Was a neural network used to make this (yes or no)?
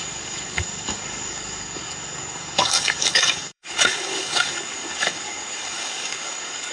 yes